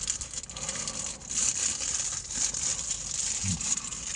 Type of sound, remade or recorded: recorded